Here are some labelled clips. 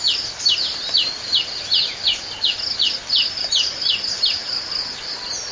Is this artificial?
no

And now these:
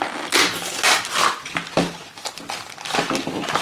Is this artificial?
yes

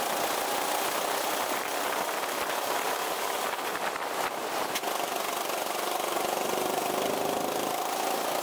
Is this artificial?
no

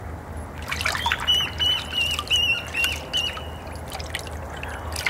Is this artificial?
no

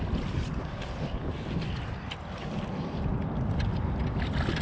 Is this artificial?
no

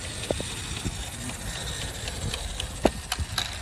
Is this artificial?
no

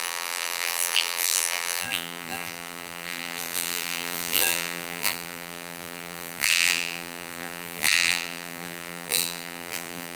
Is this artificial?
yes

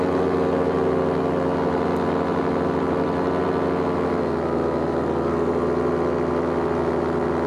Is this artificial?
no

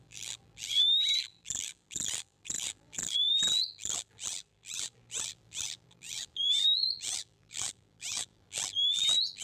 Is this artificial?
yes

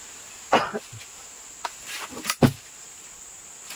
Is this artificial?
no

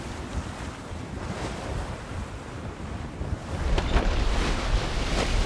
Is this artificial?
yes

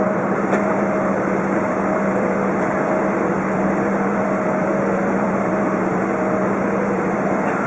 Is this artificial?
yes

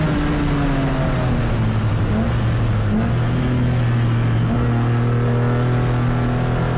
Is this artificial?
no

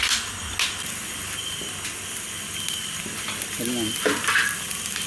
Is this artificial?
no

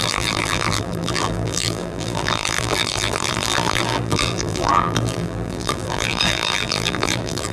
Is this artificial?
yes